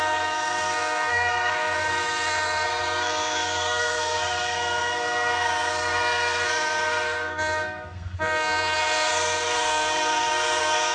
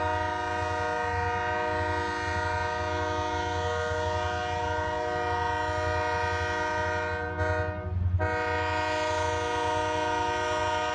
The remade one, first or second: first